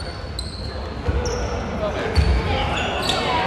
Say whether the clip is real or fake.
real